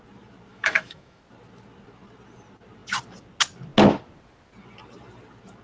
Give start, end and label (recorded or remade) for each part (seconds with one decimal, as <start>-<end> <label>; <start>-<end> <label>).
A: 0.0-0.5 recorded; 0.5-1.2 remade; 1.2-5.6 recorded

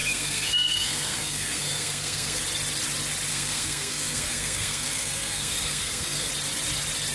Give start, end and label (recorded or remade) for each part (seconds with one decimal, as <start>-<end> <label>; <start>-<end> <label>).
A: 0.0-2.4 remade; 2.4-3.3 recorded; 3.3-6.3 remade; 6.3-7.1 recorded

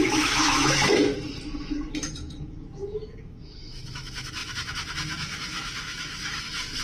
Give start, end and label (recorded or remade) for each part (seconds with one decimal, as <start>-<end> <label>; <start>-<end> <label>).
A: 0.0-1.1 remade; 1.1-1.6 recorded; 1.6-6.8 remade

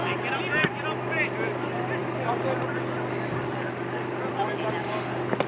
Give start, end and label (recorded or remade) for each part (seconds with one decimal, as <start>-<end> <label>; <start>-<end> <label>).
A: 0.0-5.5 recorded

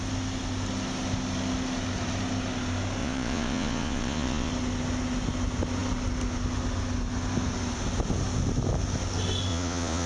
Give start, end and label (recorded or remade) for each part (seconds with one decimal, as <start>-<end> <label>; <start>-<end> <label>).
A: 0.0-3.0 recorded; 3.0-4.5 remade; 4.5-9.5 recorded; 9.5-10.1 remade